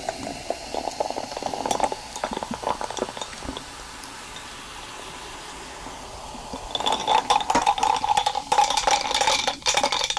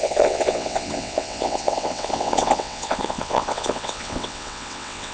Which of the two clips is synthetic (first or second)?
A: second